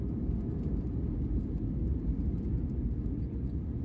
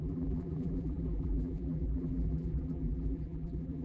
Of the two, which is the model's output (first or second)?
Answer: second